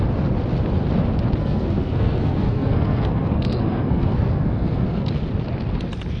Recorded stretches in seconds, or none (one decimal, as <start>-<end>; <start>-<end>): 0.0-1.4; 5.1-6.2